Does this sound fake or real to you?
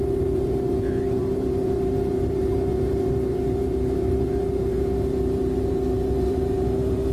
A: fake